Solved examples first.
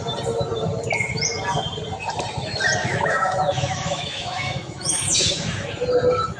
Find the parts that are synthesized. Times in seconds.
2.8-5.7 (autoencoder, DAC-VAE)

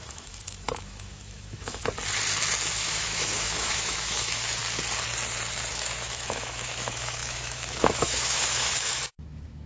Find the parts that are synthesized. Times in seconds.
0.0-1.8 (autoencoder, DAC-VAE); 2.7-4.6; 5.7-9.7

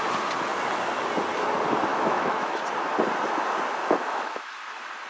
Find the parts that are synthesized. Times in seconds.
1.9-2.6 (autoencoder, DAC-VAE); 3.8-4.5

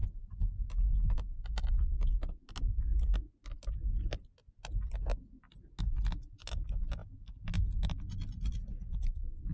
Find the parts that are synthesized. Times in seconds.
none

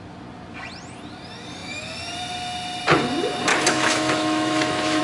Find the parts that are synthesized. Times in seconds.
3.5-5.0 (autoencoder, DAC-VAE)

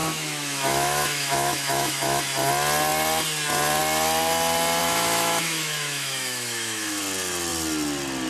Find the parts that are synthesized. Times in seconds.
0.0-2.2 (autoencoder, DAC-VAE); 4.8-7.0